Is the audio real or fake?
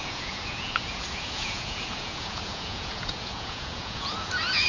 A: fake